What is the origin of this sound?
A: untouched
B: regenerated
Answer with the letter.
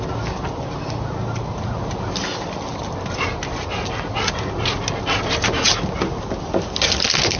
A